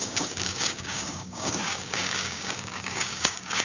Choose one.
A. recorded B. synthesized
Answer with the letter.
B